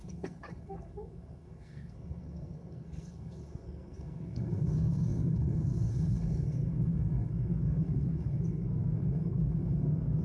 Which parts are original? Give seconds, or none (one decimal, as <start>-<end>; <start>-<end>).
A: none